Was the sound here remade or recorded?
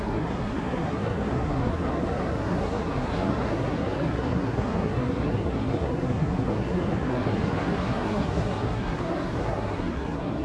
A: remade